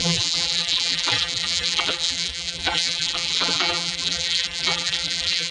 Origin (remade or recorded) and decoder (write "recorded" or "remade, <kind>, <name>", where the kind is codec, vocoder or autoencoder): remade, vocoder, BigVGAN v2